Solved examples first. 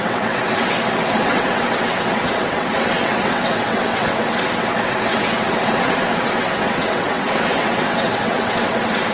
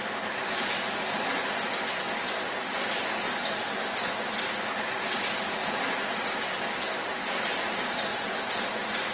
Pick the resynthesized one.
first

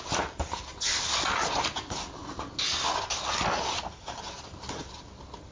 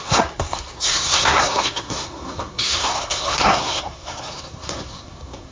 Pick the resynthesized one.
second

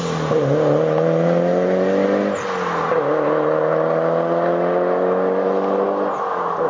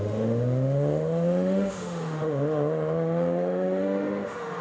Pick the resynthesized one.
second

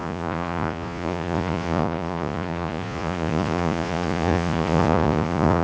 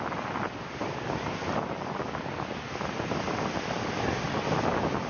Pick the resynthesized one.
first